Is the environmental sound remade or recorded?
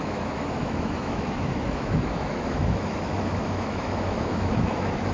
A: remade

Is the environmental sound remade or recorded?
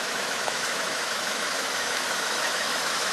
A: remade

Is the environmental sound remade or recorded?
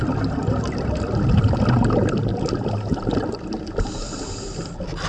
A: recorded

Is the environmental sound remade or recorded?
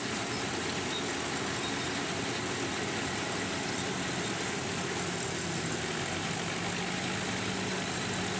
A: recorded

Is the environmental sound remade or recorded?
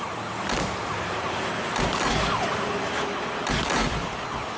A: recorded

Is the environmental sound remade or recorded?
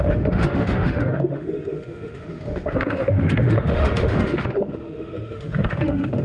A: remade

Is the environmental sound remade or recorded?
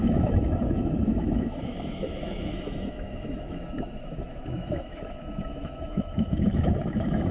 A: remade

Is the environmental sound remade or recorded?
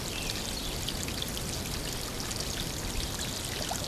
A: recorded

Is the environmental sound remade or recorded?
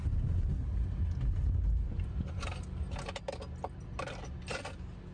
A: recorded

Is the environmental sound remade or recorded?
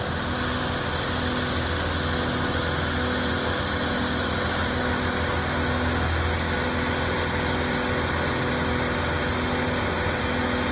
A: recorded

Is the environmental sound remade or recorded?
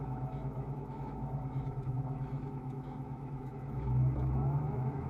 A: remade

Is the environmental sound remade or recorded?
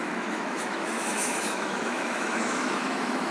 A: remade